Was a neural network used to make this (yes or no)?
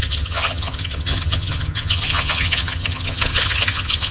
yes